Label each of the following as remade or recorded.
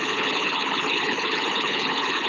remade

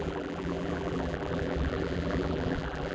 remade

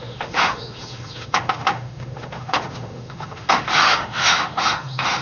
remade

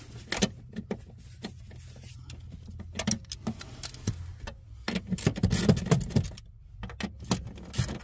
recorded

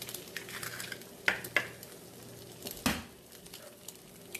recorded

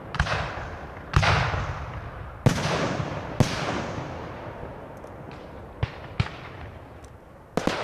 recorded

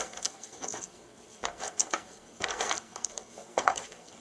remade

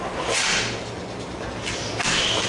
recorded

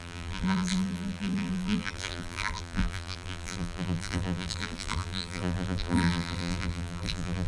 remade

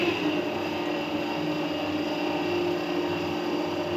recorded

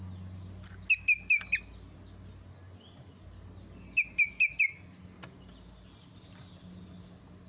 recorded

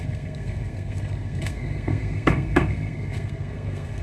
remade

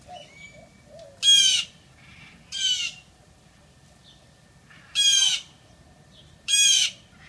recorded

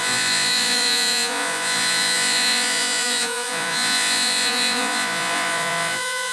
remade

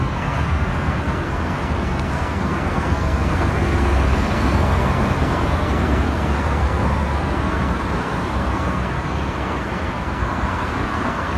remade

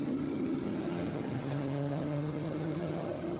remade